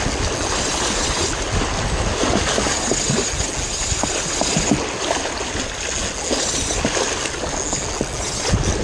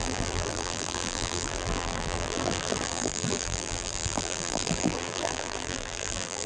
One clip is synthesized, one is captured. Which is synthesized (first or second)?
second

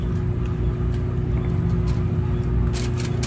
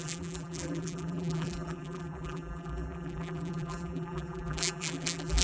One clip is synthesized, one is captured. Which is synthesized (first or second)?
second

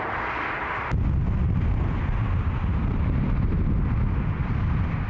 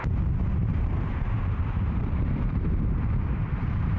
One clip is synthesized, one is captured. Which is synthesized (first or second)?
second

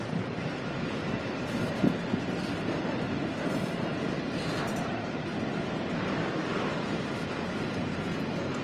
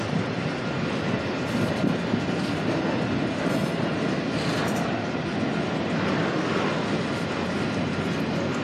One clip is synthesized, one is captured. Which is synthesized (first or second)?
first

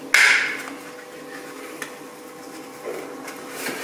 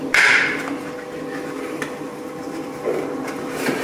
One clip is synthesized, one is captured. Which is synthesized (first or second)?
second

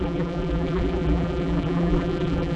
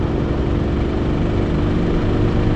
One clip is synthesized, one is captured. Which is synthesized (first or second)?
first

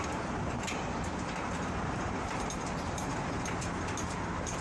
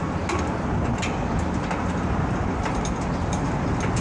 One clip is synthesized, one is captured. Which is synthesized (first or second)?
first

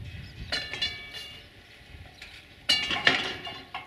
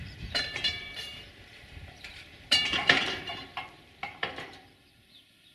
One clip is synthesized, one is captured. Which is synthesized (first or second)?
second